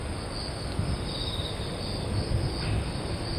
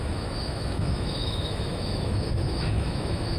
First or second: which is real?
first